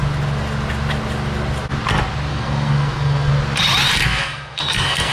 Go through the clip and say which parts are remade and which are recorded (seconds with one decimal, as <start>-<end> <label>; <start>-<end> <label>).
0.0-2.3 recorded; 2.3-3.3 remade; 3.3-4.2 recorded; 4.2-5.1 remade